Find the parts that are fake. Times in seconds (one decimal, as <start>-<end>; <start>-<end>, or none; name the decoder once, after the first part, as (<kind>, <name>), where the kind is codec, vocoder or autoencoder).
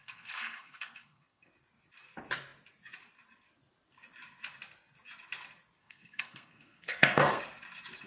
0.0-1.5 (codec, SNAC); 5.8-7.4